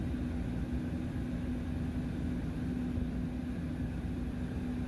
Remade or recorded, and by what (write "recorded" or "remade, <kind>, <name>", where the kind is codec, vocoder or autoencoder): recorded